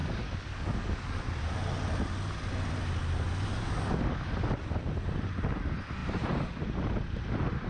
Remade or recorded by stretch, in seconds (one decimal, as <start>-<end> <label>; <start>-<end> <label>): 0.0-1.2 remade; 1.2-3.5 recorded; 3.5-4.3 remade; 4.3-7.7 recorded